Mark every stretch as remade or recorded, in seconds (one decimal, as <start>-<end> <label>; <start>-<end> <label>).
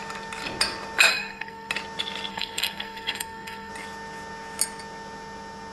0.0-1.1 recorded; 1.1-1.7 remade; 1.7-2.3 recorded; 2.3-3.7 remade; 3.7-5.7 recorded